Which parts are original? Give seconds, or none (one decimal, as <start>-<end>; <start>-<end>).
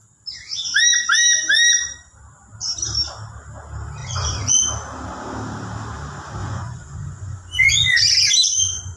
0.0-4.0; 4.6-6.4; 8.0-9.0